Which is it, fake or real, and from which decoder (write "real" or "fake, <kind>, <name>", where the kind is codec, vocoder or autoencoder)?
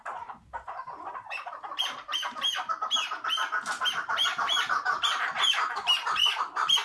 fake, vocoder, BigVGAN v2